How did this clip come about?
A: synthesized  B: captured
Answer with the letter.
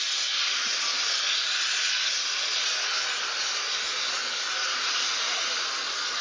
B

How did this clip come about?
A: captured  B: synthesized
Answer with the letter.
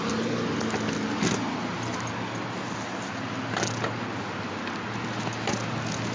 A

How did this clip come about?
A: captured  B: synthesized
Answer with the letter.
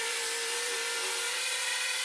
B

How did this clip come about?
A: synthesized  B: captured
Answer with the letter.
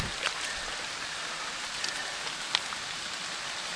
B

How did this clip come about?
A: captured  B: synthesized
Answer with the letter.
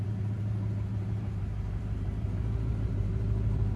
B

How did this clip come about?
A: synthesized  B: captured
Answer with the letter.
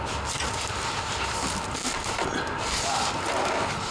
B